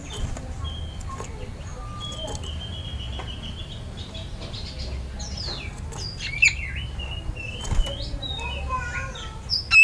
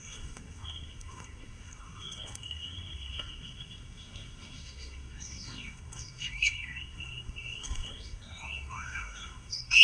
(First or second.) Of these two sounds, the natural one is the first